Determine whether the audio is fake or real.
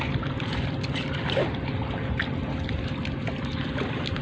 real